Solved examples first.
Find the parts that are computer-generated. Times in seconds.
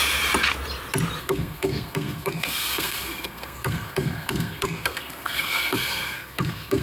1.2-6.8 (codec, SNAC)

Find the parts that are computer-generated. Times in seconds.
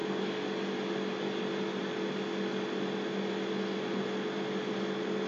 none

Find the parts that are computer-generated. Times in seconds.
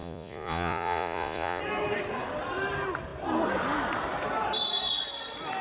0.0-1.6 (vocoder, Vocos)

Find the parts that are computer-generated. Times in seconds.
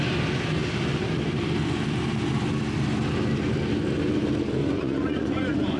4.6-5.8 (vocoder, Vocos)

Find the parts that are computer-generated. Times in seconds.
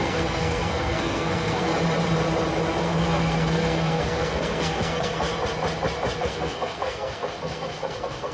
0.0-1.7 (codec, SNAC); 2.8-5.3; 6.2-8.3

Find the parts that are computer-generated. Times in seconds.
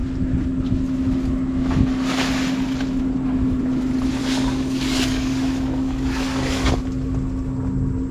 4.2-6.8 (codec, DAC)